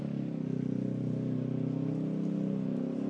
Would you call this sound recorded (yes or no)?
yes